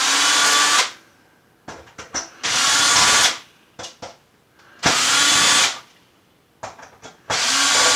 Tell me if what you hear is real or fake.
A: real